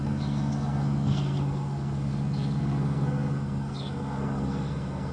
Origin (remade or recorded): remade